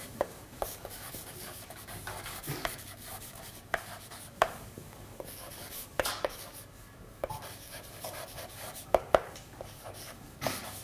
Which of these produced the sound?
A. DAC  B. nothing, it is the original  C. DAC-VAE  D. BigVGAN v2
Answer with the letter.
A